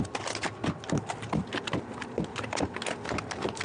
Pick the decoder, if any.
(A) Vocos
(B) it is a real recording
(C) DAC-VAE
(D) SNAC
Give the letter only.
B